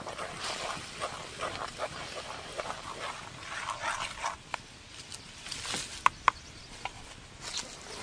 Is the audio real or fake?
real